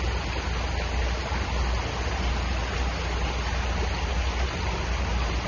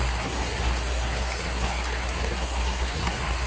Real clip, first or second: first